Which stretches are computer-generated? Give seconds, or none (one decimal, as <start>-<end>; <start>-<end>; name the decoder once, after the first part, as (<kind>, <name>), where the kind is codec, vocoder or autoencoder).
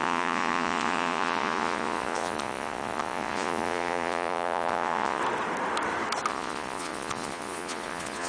0.0-5.2 (vocoder, Vocos); 6.3-8.3